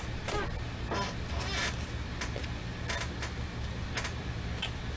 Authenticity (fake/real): real